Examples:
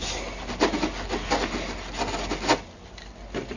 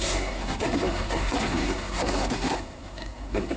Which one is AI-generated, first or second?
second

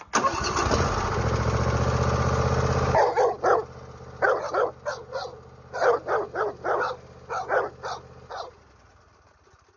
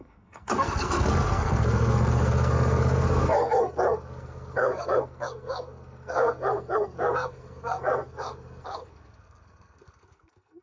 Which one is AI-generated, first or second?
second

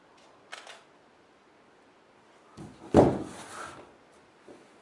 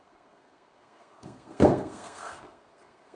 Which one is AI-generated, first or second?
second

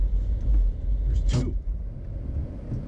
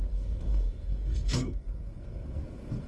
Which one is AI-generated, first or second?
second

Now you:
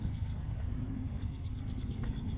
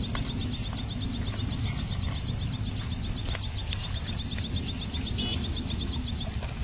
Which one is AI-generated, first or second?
first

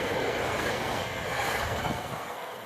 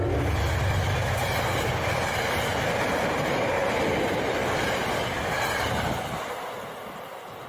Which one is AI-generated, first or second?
first